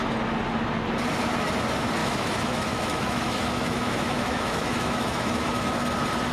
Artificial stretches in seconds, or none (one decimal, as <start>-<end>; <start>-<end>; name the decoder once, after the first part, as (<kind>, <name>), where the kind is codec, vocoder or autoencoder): 2.0-5.8 (autoencoder, DAC-VAE)